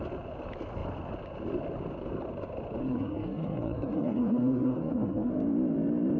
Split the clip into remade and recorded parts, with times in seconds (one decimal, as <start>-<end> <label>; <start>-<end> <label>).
0.0-2.8 recorded; 2.8-5.3 remade; 5.3-6.2 recorded